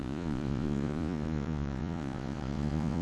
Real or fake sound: fake